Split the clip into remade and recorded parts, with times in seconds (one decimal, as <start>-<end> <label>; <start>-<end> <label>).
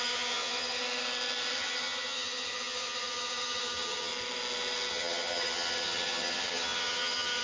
0.0-0.8 remade; 0.8-1.6 recorded; 1.6-4.1 remade; 4.1-4.9 recorded; 4.9-7.4 remade